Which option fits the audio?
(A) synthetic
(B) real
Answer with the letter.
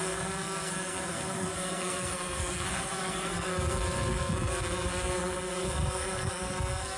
A